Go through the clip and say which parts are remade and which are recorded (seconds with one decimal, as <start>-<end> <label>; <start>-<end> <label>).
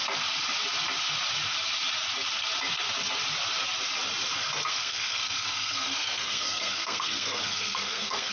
0.0-4.7 recorded; 4.7-8.3 remade